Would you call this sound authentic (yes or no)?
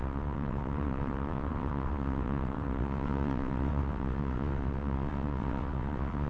no